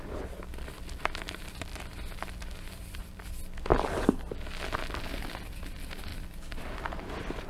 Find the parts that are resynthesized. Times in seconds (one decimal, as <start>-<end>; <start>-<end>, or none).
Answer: 1.7-3.0; 6.1-6.6